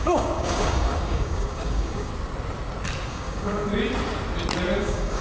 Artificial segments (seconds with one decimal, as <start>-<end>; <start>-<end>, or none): 0.0-2.1; 3.1-3.7; 4.8-5.2